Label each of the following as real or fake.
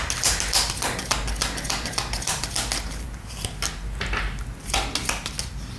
real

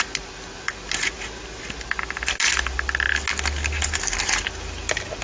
real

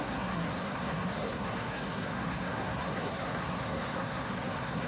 fake